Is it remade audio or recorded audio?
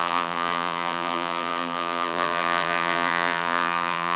remade